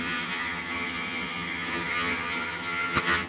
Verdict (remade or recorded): remade